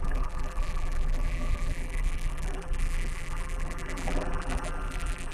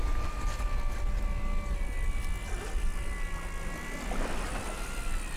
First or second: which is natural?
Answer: second